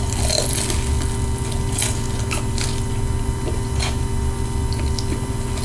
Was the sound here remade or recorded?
recorded